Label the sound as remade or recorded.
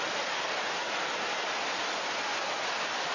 recorded